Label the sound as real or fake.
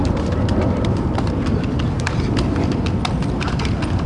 real